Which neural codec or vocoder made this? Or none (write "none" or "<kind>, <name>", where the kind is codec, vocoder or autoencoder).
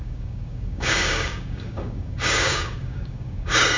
codec, DAC